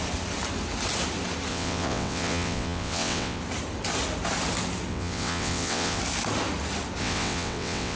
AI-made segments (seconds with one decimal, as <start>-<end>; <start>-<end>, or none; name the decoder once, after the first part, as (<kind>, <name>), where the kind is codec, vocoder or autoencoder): 1.5-3.4 (vocoder, WaveNeXt); 4.9-6.0; 7.0-8.0